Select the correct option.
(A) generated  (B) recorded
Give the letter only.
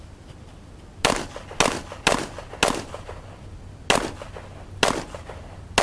B